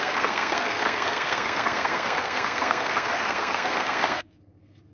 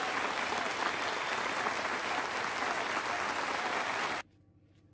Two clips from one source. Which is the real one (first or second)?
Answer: second